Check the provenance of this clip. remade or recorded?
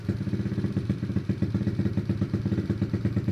remade